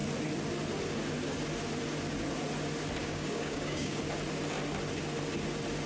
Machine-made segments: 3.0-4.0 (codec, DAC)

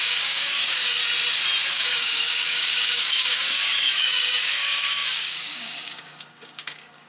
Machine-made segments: 0.0-1.0 (codec, DAC); 1.7-7.1

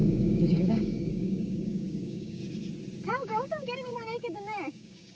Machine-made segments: 0.0-2.4 (codec, DAC); 3.1-5.2

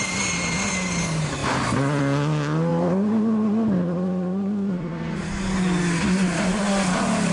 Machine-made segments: none

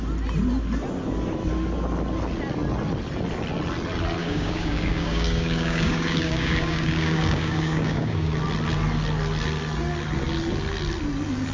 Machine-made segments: 4.2-8.3 (codec, DAC)

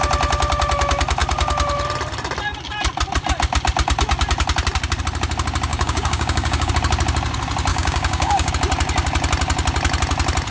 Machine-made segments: 5.7-6.7 (codec, DAC); 7.7-8.5

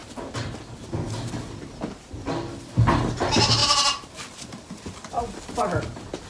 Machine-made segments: none

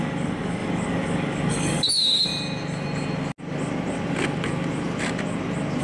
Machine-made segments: 0.0-2.3 (codec, DAC)